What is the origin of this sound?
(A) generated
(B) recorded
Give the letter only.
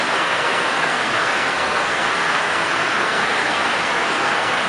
A